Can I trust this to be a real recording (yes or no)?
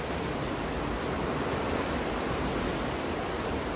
no